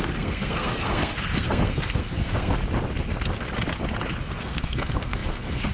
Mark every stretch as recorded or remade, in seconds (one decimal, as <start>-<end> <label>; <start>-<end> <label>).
0.0-2.6 remade; 2.6-4.2 recorded; 4.2-5.7 remade